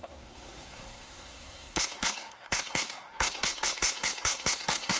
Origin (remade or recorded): remade